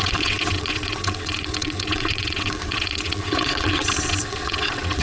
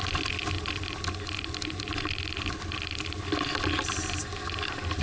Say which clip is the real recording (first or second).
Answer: second